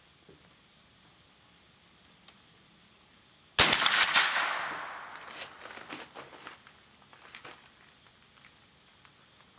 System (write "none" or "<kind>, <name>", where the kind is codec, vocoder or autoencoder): none